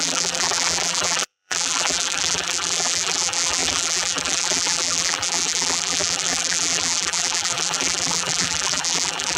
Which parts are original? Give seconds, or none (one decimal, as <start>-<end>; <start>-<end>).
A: none